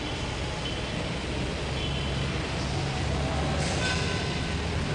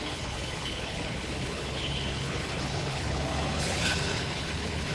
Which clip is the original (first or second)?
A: first